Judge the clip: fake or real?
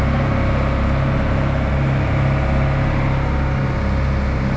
real